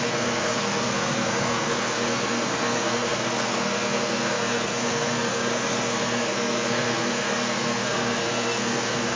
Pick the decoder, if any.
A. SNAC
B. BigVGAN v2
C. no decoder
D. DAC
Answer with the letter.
A